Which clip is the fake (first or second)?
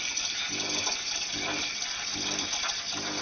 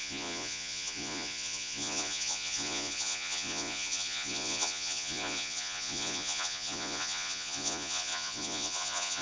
second